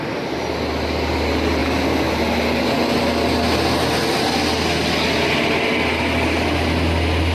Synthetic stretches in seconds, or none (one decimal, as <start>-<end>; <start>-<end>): none